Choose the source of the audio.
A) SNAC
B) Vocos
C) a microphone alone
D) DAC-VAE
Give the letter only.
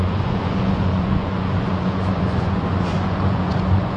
B